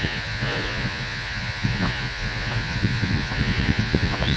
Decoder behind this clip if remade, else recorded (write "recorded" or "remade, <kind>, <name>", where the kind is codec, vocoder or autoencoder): remade, vocoder, Vocos